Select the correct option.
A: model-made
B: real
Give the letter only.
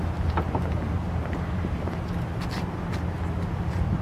B